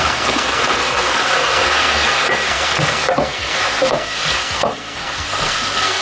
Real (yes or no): no